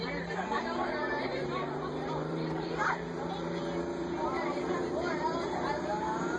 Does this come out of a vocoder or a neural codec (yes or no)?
yes